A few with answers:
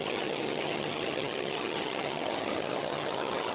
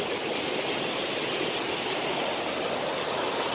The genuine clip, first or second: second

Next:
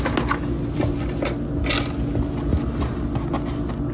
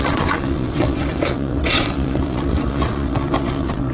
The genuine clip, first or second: first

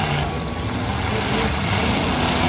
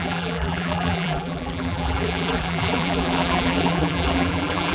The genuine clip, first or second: first